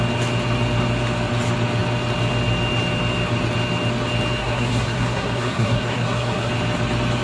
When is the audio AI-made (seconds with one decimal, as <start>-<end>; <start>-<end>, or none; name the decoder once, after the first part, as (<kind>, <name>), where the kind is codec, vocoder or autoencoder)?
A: 4.4-6.5 (codec, SNAC)